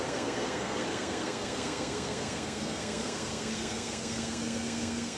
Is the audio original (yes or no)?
no